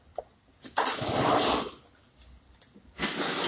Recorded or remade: recorded